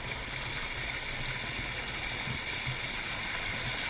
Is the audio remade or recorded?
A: recorded